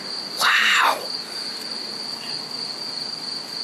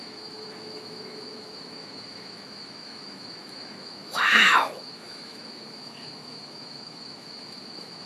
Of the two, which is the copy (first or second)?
second